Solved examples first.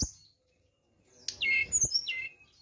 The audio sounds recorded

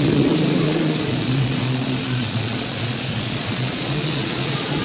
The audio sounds remade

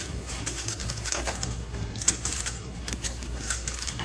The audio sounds remade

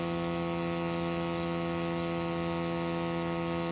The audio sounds recorded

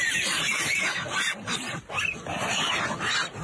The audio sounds recorded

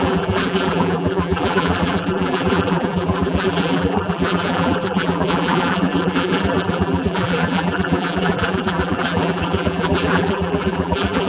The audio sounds remade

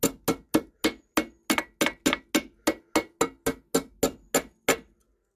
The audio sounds recorded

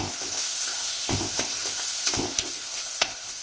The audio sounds remade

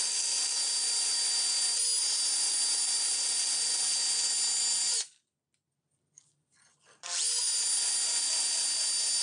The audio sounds recorded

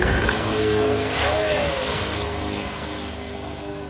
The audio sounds remade